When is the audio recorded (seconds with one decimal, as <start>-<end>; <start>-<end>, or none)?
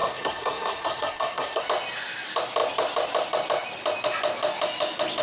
1.6-5.2